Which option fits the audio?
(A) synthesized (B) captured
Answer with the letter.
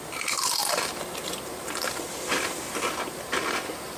A